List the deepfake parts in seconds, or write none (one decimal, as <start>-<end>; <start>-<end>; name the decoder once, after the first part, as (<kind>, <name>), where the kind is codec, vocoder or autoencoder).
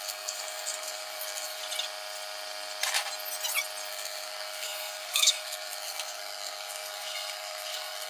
0.0-1.6 (codec, SNAC); 3.9-8.1